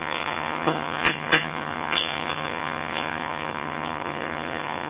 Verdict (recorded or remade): remade